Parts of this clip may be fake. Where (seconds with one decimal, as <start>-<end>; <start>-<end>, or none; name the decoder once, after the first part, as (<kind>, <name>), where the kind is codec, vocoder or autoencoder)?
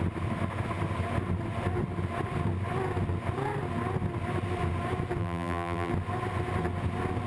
5.2-5.9 (vocoder, BigVGAN v2)